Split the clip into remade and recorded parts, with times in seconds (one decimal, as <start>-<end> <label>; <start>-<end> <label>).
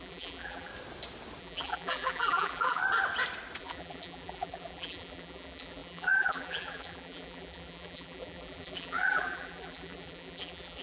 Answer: 0.0-0.7 remade; 0.7-1.4 recorded; 1.4-2.8 remade; 2.8-3.6 recorded; 3.6-10.8 remade